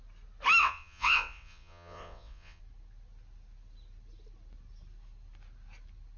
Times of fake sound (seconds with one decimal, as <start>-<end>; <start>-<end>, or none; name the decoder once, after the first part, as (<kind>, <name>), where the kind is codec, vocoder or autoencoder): 0.6-2.6 (vocoder, WaveNeXt)